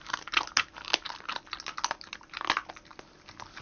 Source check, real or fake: real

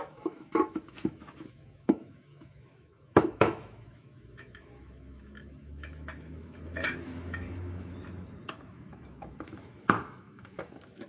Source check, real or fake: fake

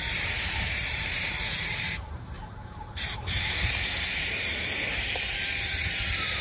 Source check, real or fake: fake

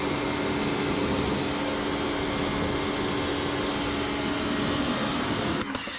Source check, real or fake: real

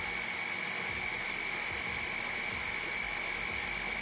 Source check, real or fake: real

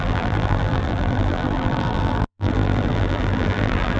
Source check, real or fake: fake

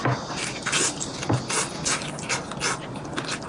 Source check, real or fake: real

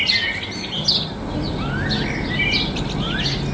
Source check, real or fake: real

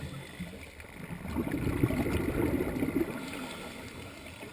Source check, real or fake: real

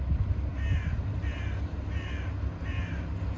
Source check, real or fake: real